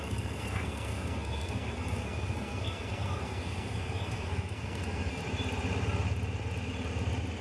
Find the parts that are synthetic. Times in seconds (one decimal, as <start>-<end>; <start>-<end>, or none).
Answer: 0.0-5.2